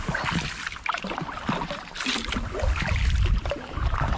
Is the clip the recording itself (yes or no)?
yes